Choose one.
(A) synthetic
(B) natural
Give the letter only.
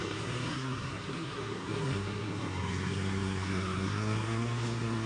A